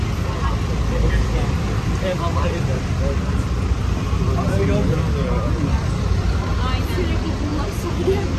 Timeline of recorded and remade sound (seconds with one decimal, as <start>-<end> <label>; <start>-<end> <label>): 0.0-8.4 recorded